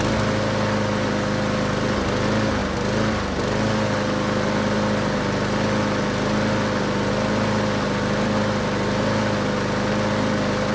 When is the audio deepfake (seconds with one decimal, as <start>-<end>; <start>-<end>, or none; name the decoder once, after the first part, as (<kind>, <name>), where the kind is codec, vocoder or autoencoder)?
none